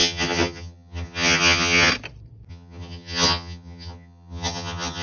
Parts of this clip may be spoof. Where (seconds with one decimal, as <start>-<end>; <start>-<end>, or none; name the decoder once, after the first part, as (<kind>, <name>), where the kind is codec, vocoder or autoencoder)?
0.0-1.9 (vocoder, HiFi-GAN); 2.5-5.0